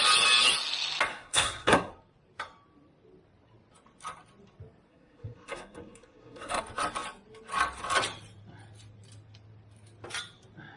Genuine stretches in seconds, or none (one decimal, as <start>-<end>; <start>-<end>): 0.0-1.1; 1.9-4.9; 6.6-10.8